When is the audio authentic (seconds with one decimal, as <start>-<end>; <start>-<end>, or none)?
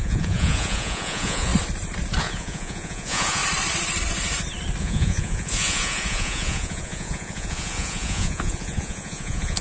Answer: 1.5-2.2; 3.4-4.8